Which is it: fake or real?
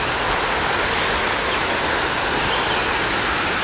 real